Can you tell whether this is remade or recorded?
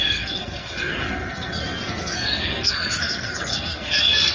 remade